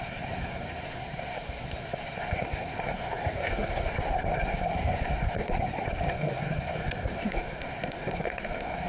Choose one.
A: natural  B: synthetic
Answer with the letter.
B